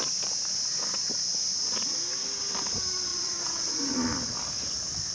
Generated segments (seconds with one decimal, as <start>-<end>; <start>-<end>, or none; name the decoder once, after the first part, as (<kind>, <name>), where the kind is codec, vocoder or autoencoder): 3.1-3.8 (vocoder, Vocos)